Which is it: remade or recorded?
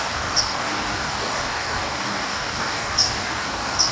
remade